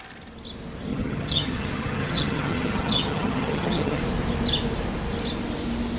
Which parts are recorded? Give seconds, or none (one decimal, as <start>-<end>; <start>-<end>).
0.0-0.9; 4.0-6.0